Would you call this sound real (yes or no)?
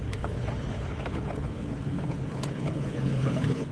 no